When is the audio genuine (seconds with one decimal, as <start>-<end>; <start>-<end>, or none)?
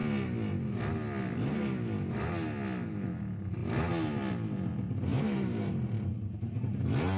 0.0-5.1; 5.7-7.2